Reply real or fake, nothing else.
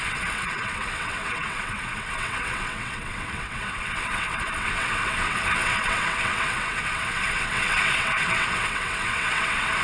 fake